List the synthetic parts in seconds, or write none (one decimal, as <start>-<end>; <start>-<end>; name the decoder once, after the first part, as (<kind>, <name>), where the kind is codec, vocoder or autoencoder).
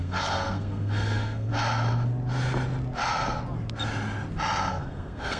0.0-1.5 (codec, SNAC); 4.7-5.4